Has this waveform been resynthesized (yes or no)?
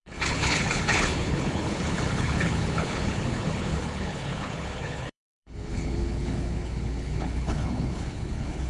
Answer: yes